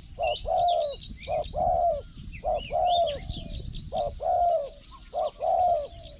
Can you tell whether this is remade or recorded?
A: recorded